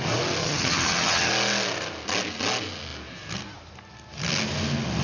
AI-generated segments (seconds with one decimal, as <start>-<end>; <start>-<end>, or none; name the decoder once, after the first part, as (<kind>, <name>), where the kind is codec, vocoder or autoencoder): 0.4-1.3 (vocoder, HiFi-GAN)